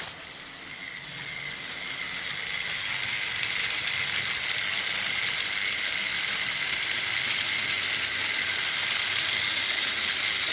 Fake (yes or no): no